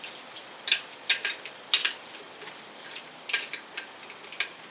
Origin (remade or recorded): recorded